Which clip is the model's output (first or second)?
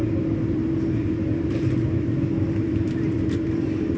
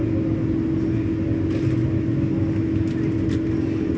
first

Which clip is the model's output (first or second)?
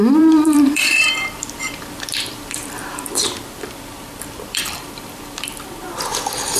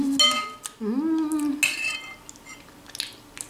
first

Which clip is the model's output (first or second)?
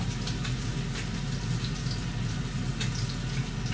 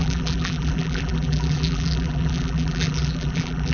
second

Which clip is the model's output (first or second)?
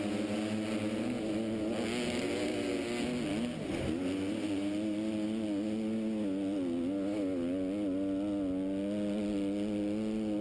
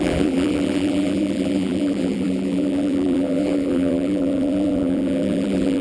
second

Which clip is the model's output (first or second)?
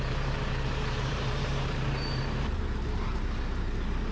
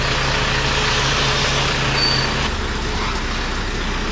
first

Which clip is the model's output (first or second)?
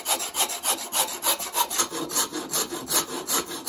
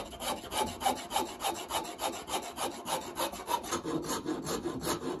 first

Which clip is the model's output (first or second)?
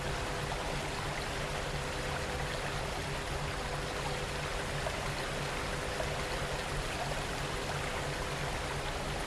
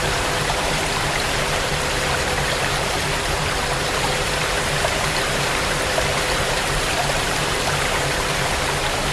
second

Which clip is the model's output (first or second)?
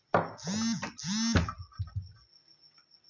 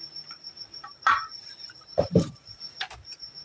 second